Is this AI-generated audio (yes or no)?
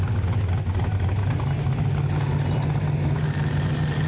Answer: no